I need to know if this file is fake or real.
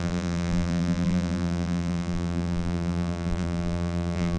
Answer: fake